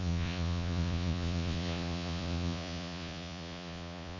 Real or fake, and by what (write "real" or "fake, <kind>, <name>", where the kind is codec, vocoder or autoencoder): fake, vocoder, Vocos